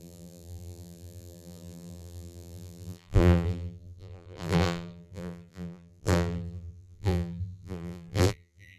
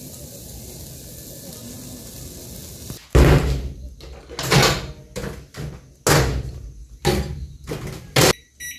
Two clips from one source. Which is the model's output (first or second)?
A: first